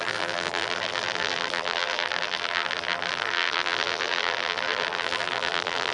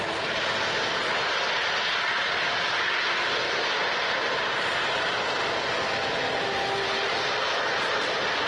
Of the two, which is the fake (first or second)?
first